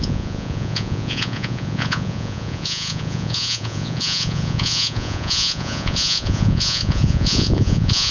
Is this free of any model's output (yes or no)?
no